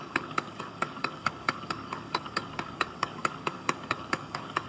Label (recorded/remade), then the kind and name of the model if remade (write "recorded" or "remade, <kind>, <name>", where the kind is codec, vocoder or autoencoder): remade, codec, DAC